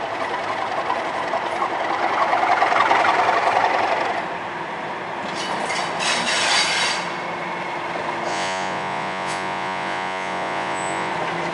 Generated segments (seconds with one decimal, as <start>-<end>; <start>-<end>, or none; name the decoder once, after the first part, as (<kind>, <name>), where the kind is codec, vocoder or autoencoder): 8.3-11.1 (vocoder, Vocos)